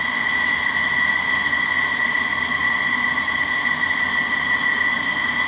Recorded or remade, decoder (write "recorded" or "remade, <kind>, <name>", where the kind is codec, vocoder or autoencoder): recorded